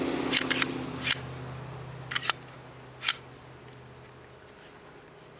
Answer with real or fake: real